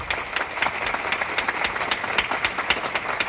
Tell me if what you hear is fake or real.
real